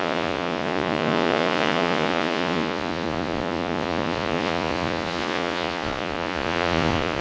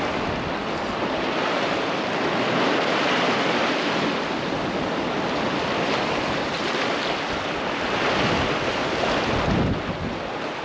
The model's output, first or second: first